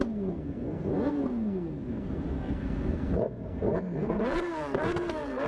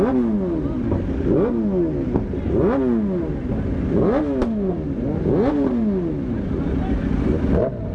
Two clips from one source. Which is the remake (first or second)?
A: first